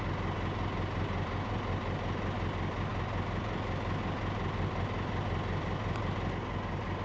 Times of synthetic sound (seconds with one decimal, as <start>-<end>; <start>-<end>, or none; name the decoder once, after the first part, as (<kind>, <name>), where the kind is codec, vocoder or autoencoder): none